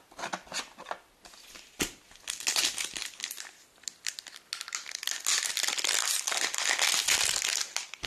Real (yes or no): yes